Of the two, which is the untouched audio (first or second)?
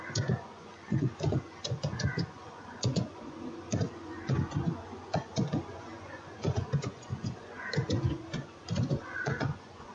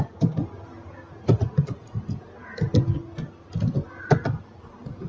second